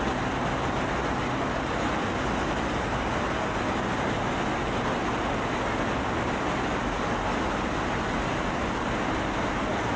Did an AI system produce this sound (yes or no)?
no